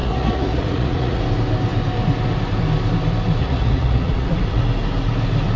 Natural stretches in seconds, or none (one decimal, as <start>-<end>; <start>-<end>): 1.2-3.4; 4.6-5.6